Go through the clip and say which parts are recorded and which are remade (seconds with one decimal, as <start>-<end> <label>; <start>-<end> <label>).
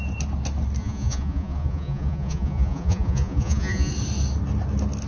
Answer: 0.0-0.8 recorded; 0.8-3.9 remade; 3.9-5.1 recorded